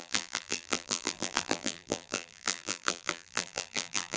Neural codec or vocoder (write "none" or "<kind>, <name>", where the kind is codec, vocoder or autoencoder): vocoder, BigVGAN v2